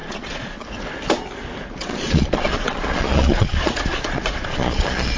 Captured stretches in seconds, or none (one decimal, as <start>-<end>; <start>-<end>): 0.6-1.8